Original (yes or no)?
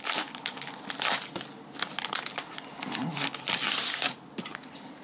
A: yes